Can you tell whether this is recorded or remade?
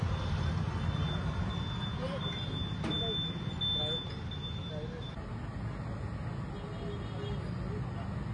recorded